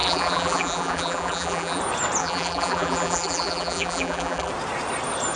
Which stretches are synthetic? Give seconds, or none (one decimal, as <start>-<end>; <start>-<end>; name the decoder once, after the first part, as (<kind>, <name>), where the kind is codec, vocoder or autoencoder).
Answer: 0.0-1.8 (vocoder, BigVGAN v2); 2.2-4.5